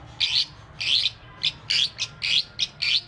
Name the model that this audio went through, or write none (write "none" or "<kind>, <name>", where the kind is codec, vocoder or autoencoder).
none